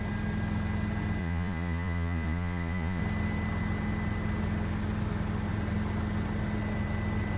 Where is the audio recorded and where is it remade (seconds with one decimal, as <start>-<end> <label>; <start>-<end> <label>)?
0.0-1.2 recorded; 1.2-3.0 remade; 3.0-7.4 recorded

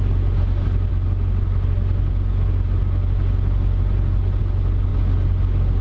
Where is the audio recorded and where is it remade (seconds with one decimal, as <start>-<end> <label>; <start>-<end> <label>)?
0.0-5.8 recorded

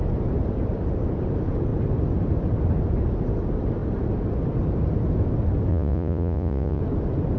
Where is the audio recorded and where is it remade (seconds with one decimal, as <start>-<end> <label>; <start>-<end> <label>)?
0.0-5.7 recorded; 5.7-6.8 remade; 6.8-7.4 recorded

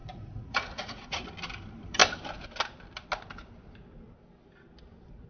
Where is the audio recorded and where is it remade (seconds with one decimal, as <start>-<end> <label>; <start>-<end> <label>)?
0.0-1.2 remade; 1.2-5.3 recorded

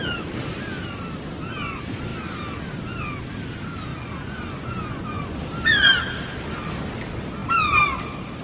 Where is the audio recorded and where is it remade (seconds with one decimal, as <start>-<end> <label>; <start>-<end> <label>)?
0.0-3.9 recorded; 3.9-5.4 remade; 5.4-8.4 recorded

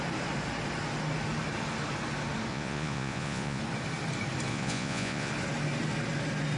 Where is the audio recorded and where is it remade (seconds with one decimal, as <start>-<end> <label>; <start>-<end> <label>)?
0.0-2.5 recorded; 2.5-3.6 remade; 3.6-4.5 recorded; 4.5-5.3 remade; 5.3-6.6 recorded